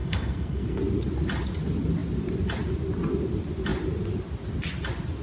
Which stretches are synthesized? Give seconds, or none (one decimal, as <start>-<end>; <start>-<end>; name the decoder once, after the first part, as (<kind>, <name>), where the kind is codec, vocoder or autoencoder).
0.0-0.8 (codec, SNAC)